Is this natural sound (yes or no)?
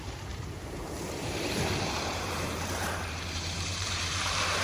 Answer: no